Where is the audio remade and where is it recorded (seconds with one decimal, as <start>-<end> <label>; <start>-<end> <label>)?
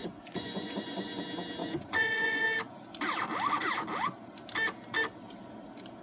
0.0-1.2 remade; 1.2-1.6 recorded; 1.6-2.4 remade; 2.4-6.0 recorded